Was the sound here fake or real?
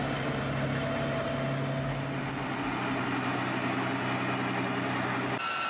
real